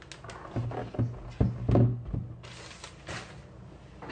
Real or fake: real